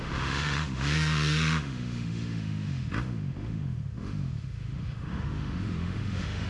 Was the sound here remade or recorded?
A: remade